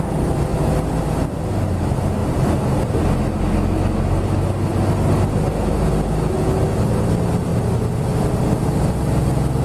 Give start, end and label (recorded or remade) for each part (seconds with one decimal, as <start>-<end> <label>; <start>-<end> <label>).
0.0-2.2 recorded; 2.2-3.0 remade; 3.0-9.6 recorded